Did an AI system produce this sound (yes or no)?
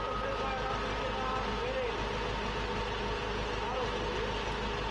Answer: no